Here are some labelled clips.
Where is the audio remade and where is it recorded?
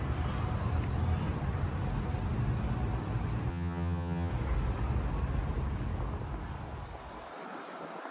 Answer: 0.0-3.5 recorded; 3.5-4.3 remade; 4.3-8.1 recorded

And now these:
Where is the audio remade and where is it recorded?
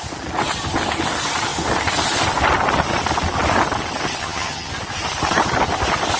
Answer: 0.0-4.2 recorded; 4.2-4.7 remade; 4.7-6.2 recorded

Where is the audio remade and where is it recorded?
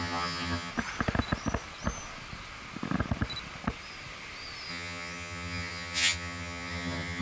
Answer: 0.0-0.7 remade; 0.7-4.7 recorded; 4.7-7.2 remade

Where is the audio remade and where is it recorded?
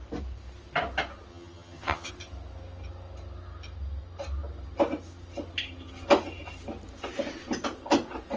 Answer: 0.0-1.3 recorded; 1.3-2.1 remade; 2.1-8.4 recorded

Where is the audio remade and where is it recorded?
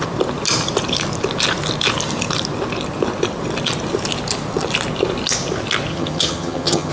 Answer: 0.0-5.9 recorded; 5.9-6.9 remade